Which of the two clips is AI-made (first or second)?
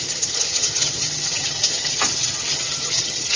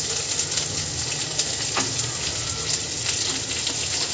first